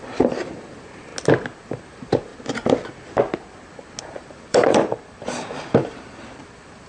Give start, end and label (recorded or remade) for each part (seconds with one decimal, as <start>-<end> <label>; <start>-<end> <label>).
0.0-1.1 remade; 1.1-1.6 recorded; 1.6-2.3 remade; 2.3-4.0 recorded; 4.0-6.9 remade